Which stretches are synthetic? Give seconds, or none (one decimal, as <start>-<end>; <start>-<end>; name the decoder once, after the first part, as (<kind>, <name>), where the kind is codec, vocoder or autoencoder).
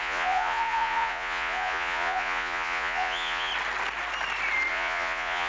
0.0-3.5 (vocoder, Vocos); 4.7-5.5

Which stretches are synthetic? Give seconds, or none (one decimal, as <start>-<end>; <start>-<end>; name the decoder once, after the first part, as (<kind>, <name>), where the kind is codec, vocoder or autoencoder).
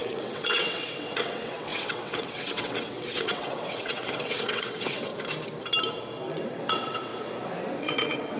0.0-5.1 (vocoder, WaveNeXt); 6.3-7.1; 7.8-8.4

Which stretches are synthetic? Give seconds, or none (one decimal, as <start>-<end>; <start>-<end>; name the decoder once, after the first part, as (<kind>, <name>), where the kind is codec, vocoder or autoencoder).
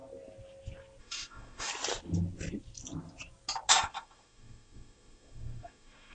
1.0-1.7 (autoencoder, DAC-VAE); 3.7-6.1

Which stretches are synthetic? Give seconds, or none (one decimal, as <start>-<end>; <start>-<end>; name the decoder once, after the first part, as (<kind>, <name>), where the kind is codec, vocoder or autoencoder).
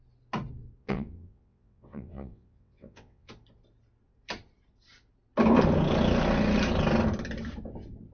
0.8-3.3 (vocoder, WaveNeXt)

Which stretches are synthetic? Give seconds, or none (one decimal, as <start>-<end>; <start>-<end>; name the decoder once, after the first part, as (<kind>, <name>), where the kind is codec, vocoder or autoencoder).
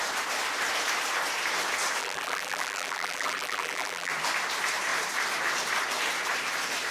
2.0-4.1 (vocoder, BigVGAN v2)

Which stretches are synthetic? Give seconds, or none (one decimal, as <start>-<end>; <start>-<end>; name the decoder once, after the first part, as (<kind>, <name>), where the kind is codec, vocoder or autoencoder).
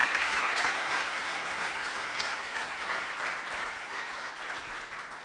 0.0-3.1 (codec, SNAC); 3.6-4.3